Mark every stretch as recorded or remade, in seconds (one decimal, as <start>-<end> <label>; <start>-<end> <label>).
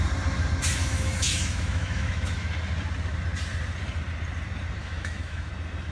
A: 0.0-0.8 recorded; 0.8-2.5 remade; 2.5-4.8 recorded; 4.8-5.5 remade; 5.5-5.9 recorded